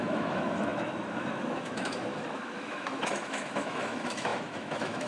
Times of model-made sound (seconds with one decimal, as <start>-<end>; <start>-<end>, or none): 0.0-5.1